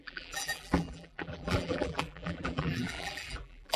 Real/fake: fake